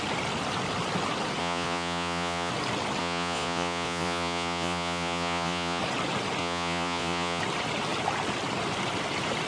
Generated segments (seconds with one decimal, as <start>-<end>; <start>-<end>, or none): 1.4-2.5; 3.0-5.8; 6.4-7.4